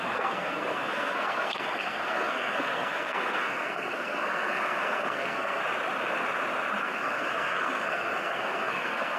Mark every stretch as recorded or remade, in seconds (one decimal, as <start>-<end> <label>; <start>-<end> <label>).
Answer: 0.0-5.6 remade; 5.6-6.8 recorded; 6.8-9.2 remade